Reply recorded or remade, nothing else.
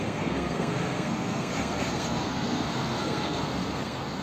remade